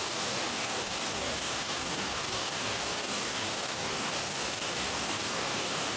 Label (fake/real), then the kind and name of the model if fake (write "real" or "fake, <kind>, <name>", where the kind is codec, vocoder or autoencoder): fake, codec, DAC